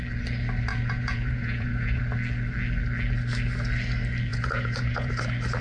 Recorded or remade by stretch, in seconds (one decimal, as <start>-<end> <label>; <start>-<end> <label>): 0.0-0.7 recorded; 0.7-2.0 remade; 2.0-4.3 recorded; 4.3-5.1 remade; 5.1-5.6 recorded